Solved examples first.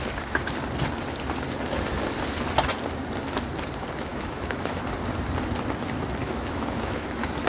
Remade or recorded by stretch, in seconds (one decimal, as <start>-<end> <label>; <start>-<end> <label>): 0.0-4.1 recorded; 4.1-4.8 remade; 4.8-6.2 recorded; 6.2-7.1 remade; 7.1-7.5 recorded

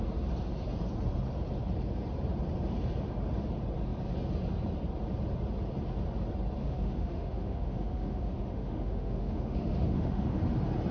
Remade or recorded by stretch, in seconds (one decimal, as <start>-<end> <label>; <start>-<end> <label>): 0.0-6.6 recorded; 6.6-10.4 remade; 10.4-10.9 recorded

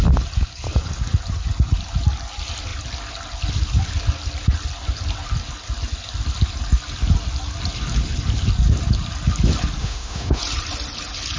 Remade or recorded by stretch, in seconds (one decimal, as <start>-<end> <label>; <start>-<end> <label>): 0.0-9.8 recorded; 9.8-10.4 remade; 10.4-11.4 recorded

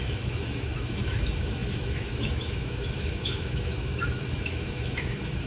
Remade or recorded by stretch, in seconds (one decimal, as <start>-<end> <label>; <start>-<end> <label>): 0.0-5.5 remade